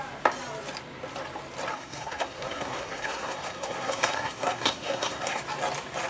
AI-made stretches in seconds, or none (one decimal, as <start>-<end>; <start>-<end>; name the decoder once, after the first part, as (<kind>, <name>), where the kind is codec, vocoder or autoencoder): 1.7-5.4 (codec, SNAC)